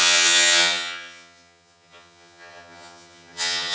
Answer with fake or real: fake